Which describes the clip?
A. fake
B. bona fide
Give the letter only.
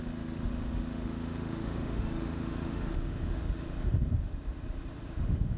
A